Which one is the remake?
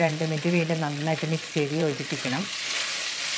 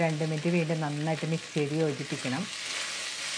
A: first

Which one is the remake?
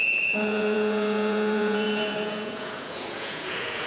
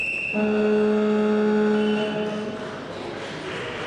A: first